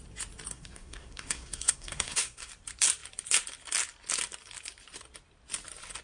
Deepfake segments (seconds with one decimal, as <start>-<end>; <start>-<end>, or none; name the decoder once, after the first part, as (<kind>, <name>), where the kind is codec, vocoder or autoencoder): 0.5-2.5 (codec, SNAC)